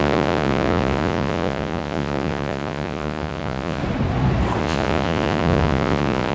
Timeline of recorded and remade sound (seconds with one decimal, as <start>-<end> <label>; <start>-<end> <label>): 0.0-3.8 remade; 3.8-4.6 recorded; 4.6-6.3 remade